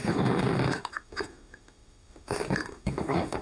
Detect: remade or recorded remade